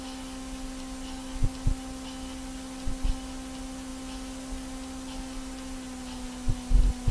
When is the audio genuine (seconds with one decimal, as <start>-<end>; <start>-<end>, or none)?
0.0-7.1